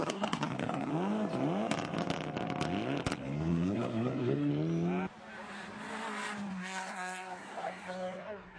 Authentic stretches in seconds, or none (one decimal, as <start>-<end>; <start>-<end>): 0.9-3.2; 4.5-6.5